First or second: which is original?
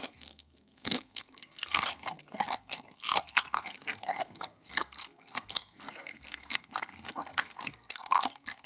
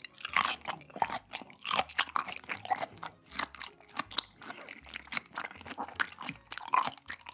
second